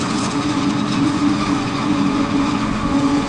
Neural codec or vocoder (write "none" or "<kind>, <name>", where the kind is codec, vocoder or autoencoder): vocoder, Vocos